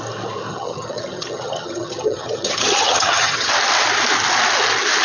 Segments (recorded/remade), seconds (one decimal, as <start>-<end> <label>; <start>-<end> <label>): 0.0-0.5 recorded; 0.5-3.5 remade; 3.5-5.0 recorded